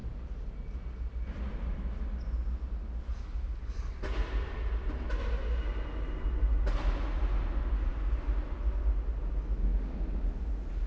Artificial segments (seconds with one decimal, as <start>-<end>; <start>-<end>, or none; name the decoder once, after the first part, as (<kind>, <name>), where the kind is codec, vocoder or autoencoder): none